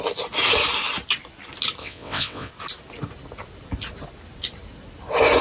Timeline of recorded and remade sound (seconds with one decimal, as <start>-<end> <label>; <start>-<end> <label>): 0.0-1.8 recorded; 1.8-2.5 remade; 2.5-5.4 recorded